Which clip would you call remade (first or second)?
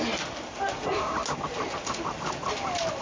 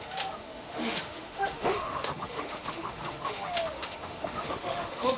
second